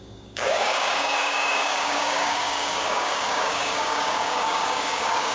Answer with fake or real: fake